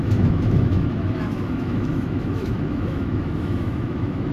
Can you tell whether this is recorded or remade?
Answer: remade